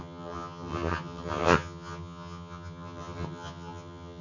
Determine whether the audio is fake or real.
fake